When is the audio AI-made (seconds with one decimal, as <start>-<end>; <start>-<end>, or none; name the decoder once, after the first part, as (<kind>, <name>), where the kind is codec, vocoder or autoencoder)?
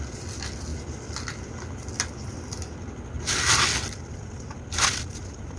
none